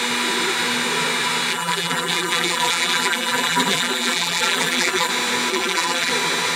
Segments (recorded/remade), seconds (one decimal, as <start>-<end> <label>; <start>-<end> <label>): 0.0-1.5 recorded; 1.5-5.1 remade; 5.1-5.5 recorded; 5.5-6.1 remade; 6.1-6.6 recorded

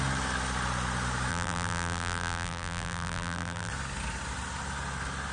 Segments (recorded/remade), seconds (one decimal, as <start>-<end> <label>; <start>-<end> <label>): 0.0-1.3 recorded; 1.3-3.7 remade; 3.7-5.3 recorded